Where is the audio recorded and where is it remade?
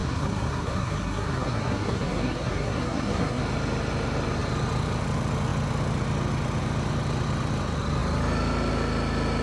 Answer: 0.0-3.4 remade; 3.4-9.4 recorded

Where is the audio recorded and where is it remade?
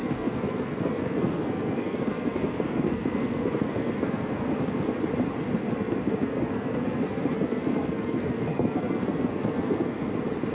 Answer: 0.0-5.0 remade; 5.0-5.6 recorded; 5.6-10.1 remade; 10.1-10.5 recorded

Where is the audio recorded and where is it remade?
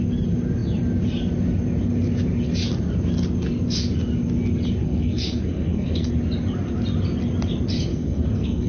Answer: 0.0-4.8 recorded; 4.8-6.1 remade; 6.1-7.9 recorded; 7.9-8.7 remade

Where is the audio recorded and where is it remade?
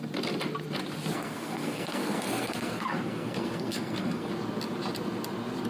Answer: 0.0-1.1 recorded; 1.1-4.3 remade; 4.3-5.7 recorded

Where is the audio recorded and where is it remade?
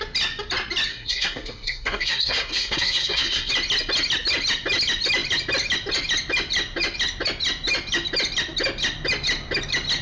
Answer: 0.0-0.9 recorded; 0.9-3.5 remade; 3.5-10.0 recorded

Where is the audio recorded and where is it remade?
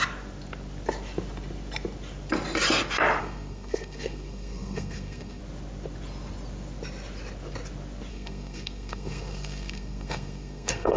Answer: 0.0-3.2 recorded; 3.2-5.4 remade; 5.4-8.1 recorded; 8.1-11.0 remade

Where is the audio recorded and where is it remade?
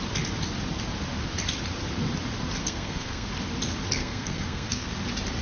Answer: 0.0-2.6 recorded; 2.6-3.3 remade; 3.3-4.0 recorded; 4.0-4.9 remade; 4.9-5.4 recorded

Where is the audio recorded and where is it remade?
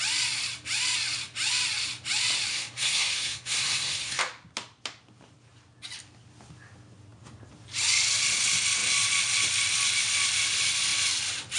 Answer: 0.0-2.5 recorded; 2.5-4.2 remade; 4.2-11.6 recorded